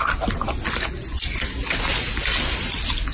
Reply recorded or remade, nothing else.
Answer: recorded